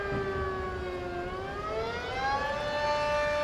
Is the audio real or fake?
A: real